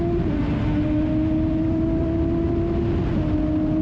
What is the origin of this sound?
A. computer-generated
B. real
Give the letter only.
B